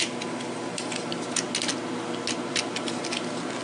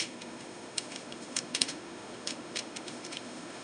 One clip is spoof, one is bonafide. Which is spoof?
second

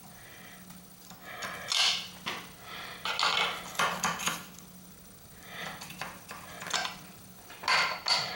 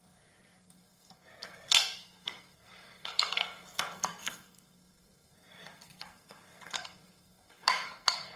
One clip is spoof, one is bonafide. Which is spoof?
second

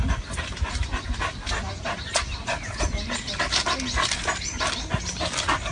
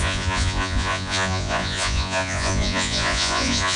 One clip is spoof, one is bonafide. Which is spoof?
second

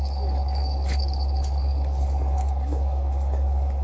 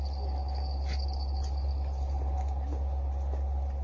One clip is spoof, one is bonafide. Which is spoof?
first